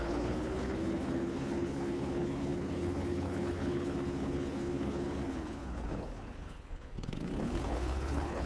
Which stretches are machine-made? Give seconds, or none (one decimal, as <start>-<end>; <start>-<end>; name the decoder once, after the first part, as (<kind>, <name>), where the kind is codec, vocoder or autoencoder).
0.0-8.5 (codec, HILCodec)